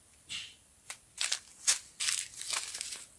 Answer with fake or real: real